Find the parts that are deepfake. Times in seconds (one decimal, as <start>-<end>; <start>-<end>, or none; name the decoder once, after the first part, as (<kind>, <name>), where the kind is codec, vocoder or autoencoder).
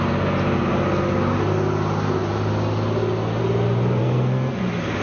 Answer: 4.0-4.6 (codec, SNAC)